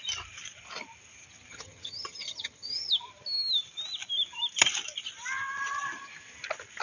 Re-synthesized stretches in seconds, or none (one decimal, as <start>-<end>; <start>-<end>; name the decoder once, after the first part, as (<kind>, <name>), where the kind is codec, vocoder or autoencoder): 1.5-2.9 (vocoder, HiFi-GAN)